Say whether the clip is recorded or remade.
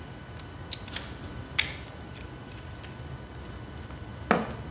recorded